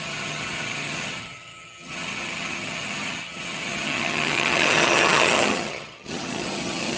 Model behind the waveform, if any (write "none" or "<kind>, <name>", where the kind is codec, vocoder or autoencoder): vocoder, HiFi-GAN